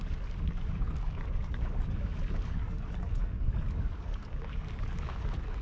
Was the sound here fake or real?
fake